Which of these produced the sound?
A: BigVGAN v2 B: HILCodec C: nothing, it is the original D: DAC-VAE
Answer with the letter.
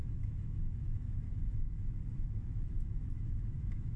D